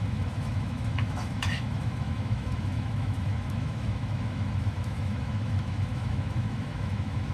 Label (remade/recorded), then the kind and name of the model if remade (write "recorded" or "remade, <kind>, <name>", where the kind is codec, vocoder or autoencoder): remade, autoencoder, DAC-VAE